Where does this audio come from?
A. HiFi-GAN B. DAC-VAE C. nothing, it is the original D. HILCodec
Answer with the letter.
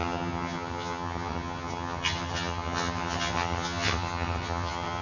A